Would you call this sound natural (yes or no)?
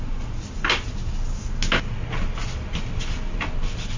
yes